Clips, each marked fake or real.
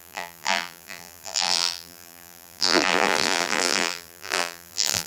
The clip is fake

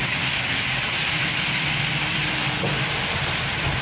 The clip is fake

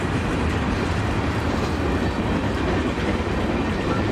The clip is real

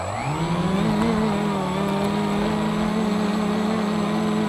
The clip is real